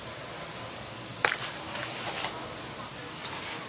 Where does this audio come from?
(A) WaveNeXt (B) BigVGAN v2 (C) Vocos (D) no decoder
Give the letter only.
D